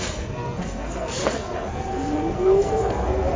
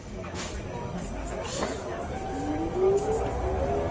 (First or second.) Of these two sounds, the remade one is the first